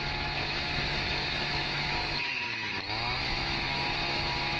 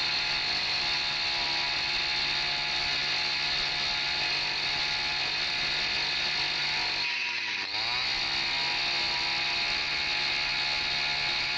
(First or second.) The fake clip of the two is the first